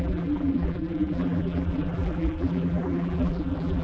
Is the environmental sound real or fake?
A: fake